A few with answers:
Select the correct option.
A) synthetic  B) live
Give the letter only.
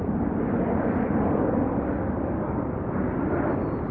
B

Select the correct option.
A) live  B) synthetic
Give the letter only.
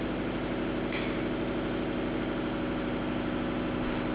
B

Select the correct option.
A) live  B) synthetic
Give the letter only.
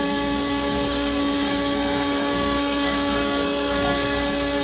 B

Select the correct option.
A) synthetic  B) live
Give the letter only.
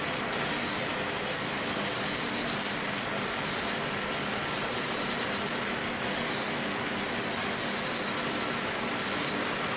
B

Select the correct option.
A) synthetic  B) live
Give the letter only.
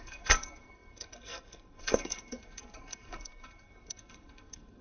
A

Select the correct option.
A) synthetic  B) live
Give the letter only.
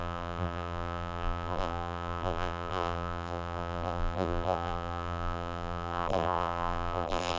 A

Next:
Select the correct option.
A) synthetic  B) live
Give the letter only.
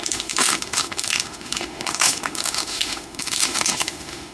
A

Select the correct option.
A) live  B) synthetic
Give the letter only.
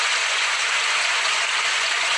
B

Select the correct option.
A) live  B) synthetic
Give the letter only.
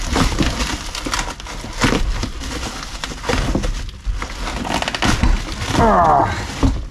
A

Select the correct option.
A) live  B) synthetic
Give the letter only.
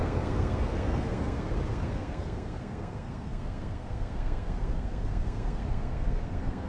B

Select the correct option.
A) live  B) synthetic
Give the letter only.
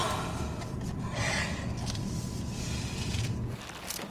A